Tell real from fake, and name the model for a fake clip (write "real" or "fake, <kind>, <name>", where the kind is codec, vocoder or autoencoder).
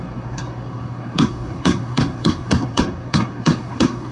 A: fake, codec, SNAC